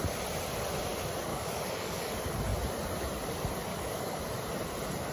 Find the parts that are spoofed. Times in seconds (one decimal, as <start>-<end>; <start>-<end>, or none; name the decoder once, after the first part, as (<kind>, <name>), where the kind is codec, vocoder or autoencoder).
1.3-2.1 (codec, DAC); 3.7-4.2

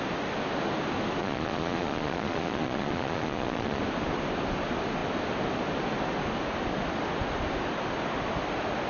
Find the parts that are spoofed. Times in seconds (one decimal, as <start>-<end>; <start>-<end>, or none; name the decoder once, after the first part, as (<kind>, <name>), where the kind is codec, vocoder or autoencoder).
1.2-3.8 (vocoder, Vocos)

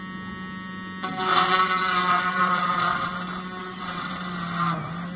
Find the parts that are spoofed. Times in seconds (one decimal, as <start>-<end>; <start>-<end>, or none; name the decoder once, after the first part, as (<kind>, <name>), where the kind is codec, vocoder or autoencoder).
1.3-3.1 (vocoder, WaveNeXt); 3.6-4.2

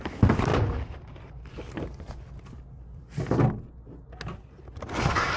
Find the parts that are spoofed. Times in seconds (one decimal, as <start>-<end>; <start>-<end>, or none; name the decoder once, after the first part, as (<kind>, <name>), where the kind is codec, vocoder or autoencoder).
none

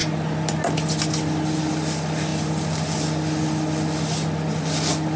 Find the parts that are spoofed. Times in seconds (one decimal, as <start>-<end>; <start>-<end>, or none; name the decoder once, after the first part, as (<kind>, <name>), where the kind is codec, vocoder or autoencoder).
none

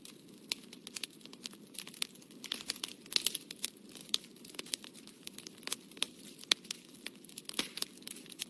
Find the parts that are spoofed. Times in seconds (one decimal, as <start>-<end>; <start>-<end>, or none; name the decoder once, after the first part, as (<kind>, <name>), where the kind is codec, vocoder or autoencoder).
4.0-5.6 (vocoder, BigVGAN v2)

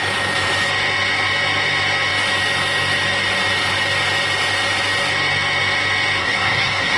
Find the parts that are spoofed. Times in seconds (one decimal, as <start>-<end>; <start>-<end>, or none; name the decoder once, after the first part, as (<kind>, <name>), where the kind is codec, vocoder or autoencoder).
6.2-7.0 (codec, SNAC)

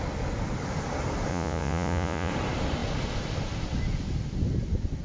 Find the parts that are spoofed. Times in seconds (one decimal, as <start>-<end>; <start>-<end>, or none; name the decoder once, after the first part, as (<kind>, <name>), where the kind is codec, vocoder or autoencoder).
1.3-2.3 (vocoder, Vocos)